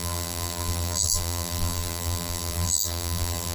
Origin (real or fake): fake